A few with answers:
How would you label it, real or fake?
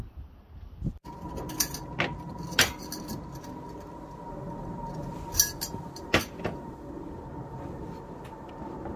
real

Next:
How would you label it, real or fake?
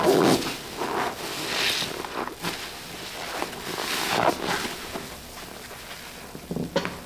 real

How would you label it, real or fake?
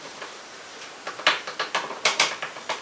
fake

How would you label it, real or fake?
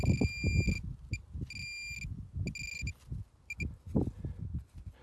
real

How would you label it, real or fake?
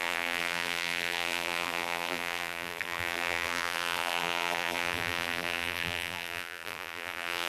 fake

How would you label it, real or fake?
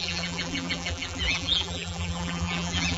fake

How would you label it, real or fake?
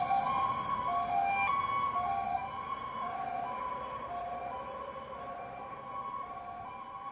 fake